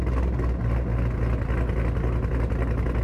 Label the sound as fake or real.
real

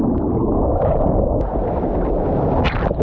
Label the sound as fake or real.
real